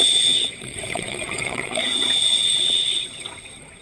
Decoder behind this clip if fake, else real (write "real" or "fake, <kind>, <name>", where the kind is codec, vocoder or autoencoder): fake, vocoder, WaveNeXt